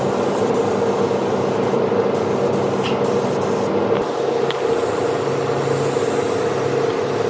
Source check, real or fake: real